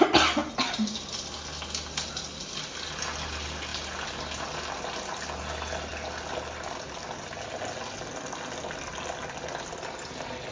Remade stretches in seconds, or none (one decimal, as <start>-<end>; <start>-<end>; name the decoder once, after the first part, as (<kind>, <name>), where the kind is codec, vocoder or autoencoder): none